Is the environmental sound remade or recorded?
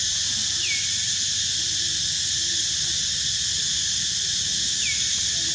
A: recorded